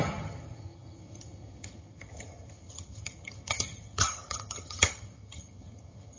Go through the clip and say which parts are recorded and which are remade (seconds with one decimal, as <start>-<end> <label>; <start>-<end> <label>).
0.0-6.2 remade